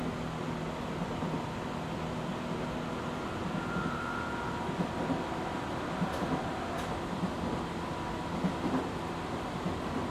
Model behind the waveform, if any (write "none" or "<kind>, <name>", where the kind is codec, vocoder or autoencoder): none